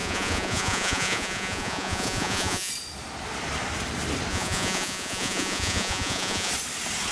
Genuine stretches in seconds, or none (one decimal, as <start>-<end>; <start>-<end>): 2.7-4.3; 6.5-7.1